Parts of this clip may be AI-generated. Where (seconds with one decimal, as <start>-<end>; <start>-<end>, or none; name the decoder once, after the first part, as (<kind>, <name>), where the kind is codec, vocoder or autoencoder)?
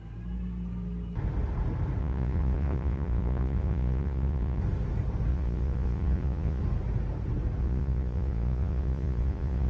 2.0-4.6 (vocoder, Vocos); 5.3-6.6; 7.6-9.7